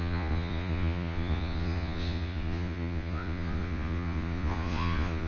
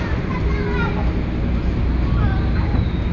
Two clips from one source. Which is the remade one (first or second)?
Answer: first